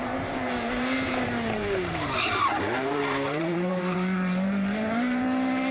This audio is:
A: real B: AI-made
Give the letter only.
B